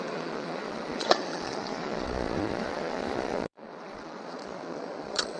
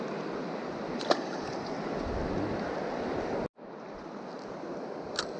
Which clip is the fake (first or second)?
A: first